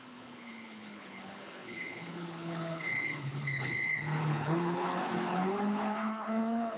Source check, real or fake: fake